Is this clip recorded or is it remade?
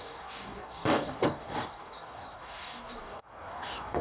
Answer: remade